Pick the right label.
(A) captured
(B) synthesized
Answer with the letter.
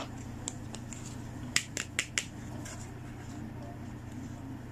A